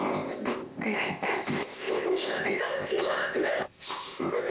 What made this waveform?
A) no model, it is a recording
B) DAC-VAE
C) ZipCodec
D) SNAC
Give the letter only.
C